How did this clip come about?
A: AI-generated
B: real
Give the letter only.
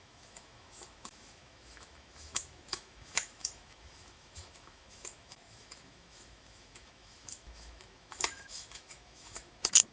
A